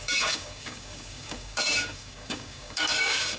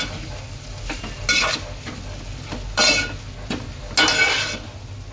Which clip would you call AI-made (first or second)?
first